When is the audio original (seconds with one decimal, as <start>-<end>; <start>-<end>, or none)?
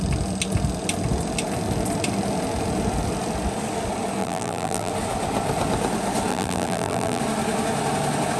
0.0-4.2; 4.9-6.3; 7.2-8.4